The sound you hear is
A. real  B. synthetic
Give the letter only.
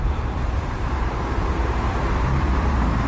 B